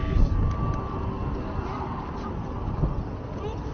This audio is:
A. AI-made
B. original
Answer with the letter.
B